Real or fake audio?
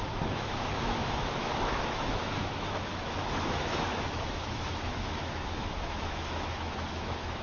fake